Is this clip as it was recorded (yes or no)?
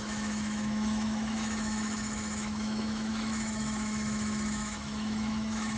no